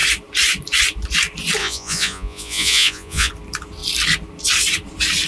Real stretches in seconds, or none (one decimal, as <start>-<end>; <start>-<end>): 0.0-1.6; 3.3-5.3